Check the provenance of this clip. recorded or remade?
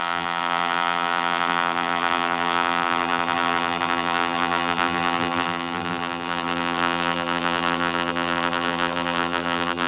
remade